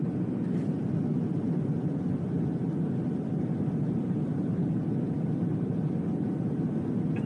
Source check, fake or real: real